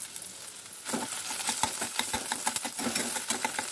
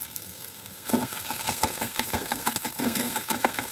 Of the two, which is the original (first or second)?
first